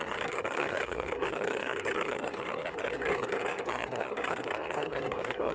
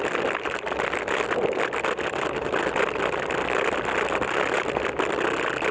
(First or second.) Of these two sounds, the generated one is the first